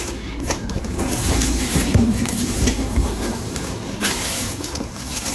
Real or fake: fake